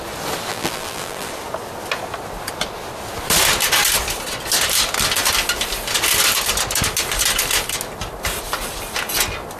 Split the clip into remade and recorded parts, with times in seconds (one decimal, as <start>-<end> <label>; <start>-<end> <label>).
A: 0.0-0.5 recorded; 0.5-1.3 remade; 1.3-9.6 recorded